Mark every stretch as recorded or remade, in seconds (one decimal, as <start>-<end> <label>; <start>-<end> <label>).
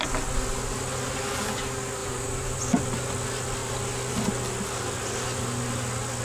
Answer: 0.0-2.0 recorded; 2.0-2.6 remade; 2.6-6.2 recorded